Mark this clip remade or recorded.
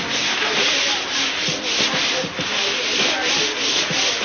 recorded